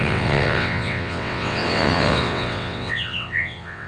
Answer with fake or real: fake